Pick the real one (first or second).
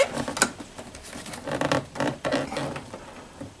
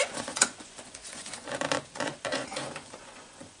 first